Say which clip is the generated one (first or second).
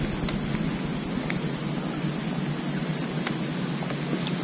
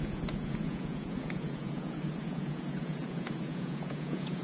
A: second